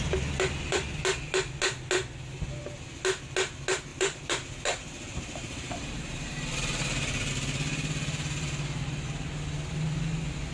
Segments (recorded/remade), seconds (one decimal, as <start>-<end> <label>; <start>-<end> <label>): 0.0-3.9 recorded; 3.9-7.3 remade; 7.3-10.5 recorded